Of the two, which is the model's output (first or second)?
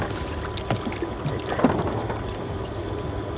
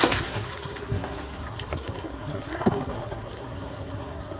second